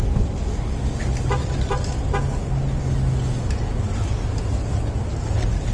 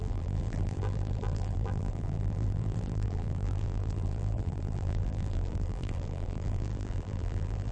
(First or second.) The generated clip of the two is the second